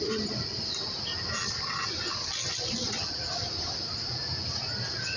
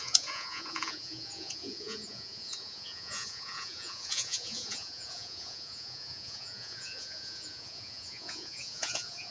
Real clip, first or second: first